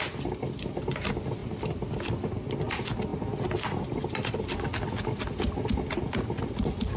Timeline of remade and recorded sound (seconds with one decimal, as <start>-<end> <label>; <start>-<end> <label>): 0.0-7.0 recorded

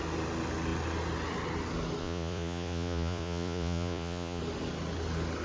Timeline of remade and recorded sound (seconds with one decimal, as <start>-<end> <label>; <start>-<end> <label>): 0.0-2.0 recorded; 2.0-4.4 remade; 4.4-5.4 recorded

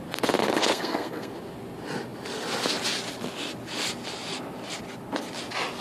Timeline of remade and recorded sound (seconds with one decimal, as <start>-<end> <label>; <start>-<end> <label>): 0.0-0.4 recorded; 0.4-1.3 remade; 1.3-5.8 recorded